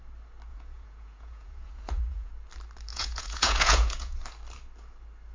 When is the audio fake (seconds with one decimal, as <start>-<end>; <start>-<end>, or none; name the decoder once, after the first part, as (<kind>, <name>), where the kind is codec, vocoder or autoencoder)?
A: 0.5-2.3 (vocoder, Vocos); 2.9-4.2